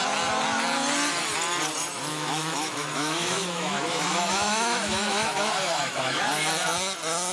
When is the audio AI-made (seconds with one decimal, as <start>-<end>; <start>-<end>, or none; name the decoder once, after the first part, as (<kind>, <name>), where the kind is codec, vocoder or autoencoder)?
2.1-6.2 (autoencoder, DAC-VAE)